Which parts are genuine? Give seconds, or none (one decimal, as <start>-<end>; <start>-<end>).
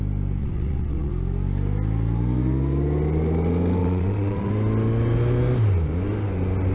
0.0-0.4; 1.1-3.8; 4.5-6.7